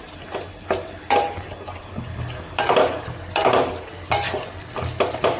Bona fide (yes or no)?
yes